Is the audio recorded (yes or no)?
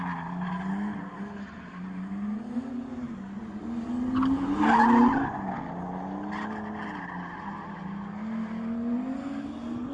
yes